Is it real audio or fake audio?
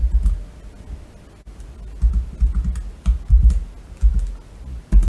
real